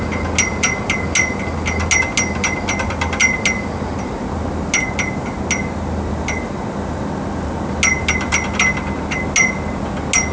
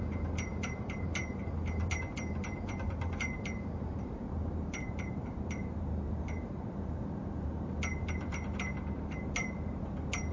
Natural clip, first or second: first